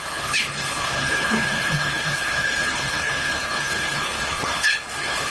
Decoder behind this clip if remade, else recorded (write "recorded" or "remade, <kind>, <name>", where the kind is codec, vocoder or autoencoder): remade, codec, HILCodec